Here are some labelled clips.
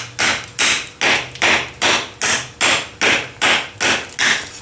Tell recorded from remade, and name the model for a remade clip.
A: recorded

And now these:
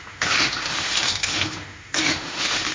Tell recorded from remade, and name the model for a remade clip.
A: remade, autoencoder, DAC-VAE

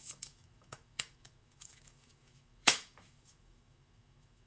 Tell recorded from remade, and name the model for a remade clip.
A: remade, autoencoder, DAC-VAE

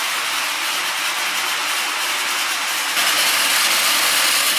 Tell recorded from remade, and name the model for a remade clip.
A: recorded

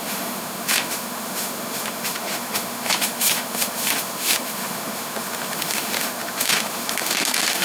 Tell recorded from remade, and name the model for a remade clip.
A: remade, autoencoder, DAC-VAE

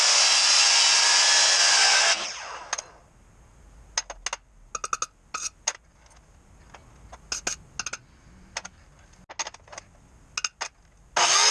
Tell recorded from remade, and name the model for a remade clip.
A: recorded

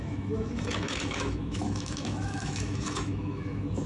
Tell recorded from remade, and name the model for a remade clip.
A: remade, autoencoder, DAC-VAE